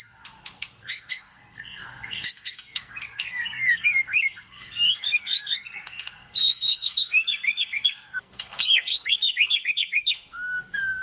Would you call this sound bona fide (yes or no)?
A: no